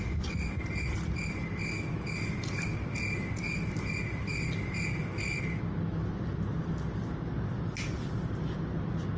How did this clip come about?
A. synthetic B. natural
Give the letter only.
B